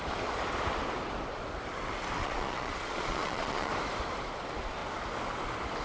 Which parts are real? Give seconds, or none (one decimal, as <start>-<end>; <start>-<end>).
0.0-2.2; 3.7-5.8

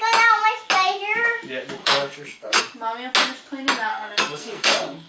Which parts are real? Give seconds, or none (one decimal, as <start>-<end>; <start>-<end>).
0.0-1.8; 2.6-3.9

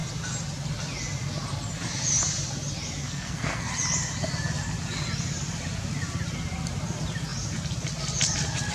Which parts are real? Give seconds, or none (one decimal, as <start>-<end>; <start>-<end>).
0.0-3.0; 3.7-8.7